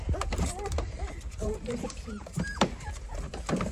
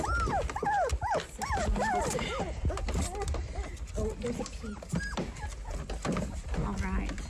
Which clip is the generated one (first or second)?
first